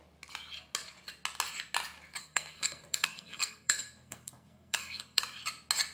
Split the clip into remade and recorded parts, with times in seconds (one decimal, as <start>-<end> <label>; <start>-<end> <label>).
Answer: 0.0-2.2 recorded; 2.2-5.2 remade; 5.2-5.9 recorded